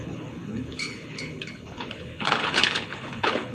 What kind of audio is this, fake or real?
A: fake